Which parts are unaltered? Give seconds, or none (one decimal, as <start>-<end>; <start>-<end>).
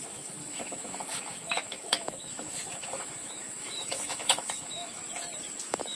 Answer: 5.0-5.6